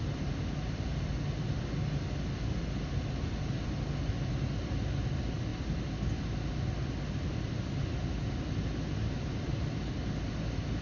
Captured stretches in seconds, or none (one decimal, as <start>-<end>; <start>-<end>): 0.0-10.8